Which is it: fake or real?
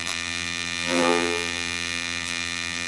fake